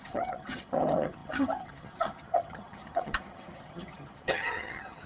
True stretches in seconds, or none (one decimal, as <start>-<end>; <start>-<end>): none